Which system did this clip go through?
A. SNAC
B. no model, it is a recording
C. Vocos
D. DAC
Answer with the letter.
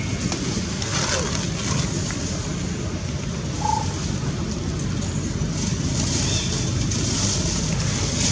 B